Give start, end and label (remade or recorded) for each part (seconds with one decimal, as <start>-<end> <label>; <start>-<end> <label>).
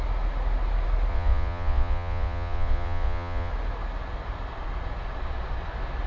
0.0-1.1 recorded; 1.1-3.5 remade; 3.5-6.1 recorded